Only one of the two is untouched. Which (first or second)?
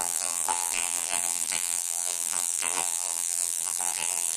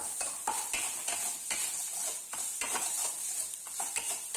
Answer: second